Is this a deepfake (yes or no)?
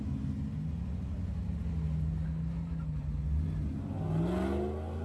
no